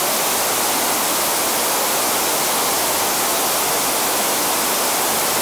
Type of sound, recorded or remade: recorded